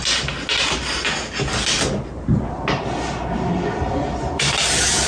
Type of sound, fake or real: real